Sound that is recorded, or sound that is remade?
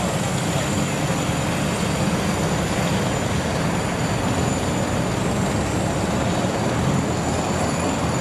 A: recorded